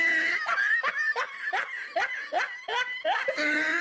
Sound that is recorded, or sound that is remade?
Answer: recorded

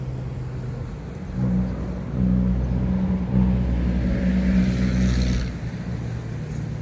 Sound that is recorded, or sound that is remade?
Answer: recorded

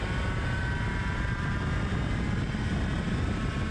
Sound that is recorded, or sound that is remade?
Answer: recorded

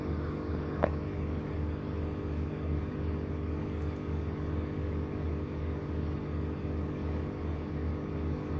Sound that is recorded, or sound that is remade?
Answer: remade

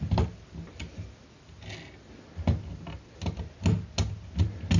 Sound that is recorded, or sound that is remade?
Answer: recorded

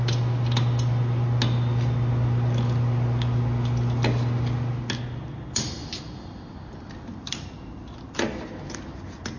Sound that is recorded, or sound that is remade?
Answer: recorded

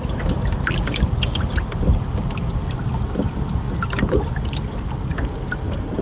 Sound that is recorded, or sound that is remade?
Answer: recorded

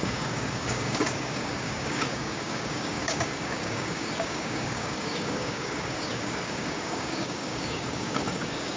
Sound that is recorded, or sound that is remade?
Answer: remade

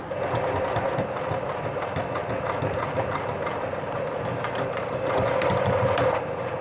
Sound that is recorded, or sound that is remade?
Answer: recorded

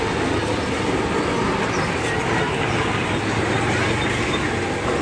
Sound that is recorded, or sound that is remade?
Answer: recorded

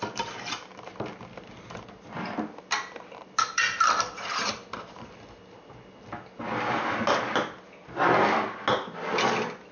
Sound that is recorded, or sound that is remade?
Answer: recorded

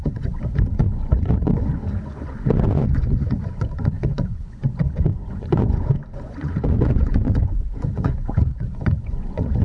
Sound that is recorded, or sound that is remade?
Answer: remade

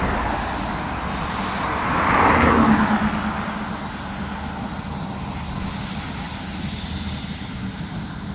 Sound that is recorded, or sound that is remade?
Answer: recorded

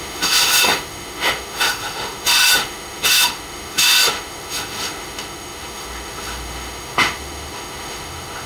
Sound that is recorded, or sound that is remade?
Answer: remade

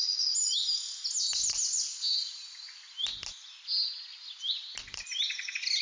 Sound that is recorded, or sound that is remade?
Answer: recorded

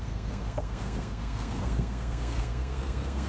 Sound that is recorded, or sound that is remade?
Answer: remade